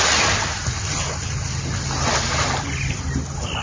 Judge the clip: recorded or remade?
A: recorded